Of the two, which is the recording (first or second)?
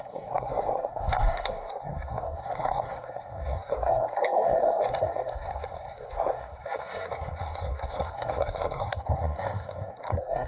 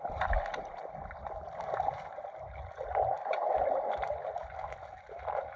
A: second